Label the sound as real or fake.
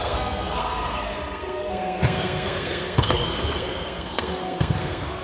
fake